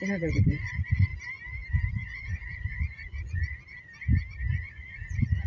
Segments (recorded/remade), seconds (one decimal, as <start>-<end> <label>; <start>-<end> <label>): 0.0-1.1 remade; 1.1-1.9 recorded; 1.9-3.4 remade; 3.4-4.5 recorded; 4.5-5.5 remade